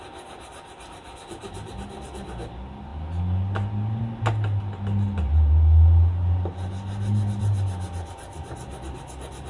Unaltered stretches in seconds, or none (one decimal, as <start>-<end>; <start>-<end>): 0.0-9.5